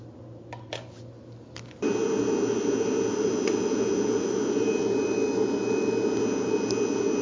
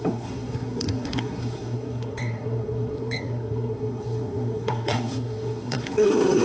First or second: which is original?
first